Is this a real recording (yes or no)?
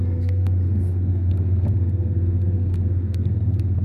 no